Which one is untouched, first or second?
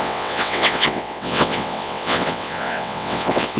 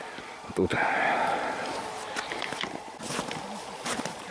second